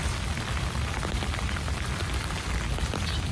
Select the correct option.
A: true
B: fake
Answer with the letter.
A